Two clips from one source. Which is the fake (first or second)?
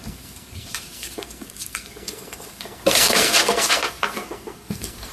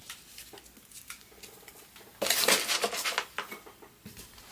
first